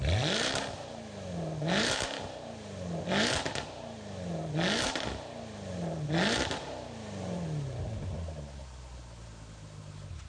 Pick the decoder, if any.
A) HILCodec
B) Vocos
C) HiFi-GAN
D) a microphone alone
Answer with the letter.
D